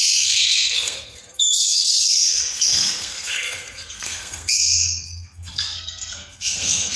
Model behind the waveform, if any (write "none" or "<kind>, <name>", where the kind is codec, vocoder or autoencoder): codec, SNAC